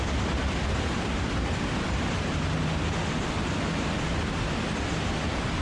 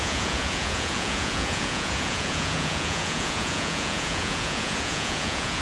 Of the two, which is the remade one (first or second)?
second